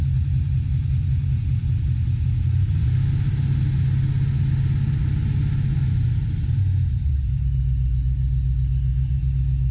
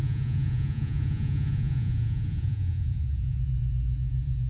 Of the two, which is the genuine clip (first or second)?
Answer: first